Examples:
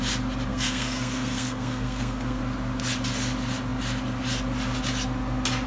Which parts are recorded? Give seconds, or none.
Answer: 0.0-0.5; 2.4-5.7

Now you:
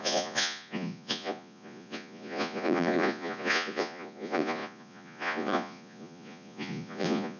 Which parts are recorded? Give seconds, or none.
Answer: none

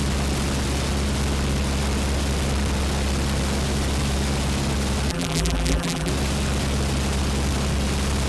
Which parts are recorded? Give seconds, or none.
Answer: 0.0-5.1; 6.1-8.3

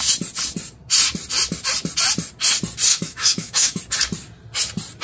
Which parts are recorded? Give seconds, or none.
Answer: 0.0-2.9; 3.8-5.0